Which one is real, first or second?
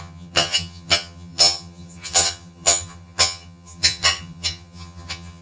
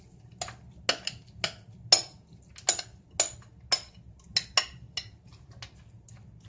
second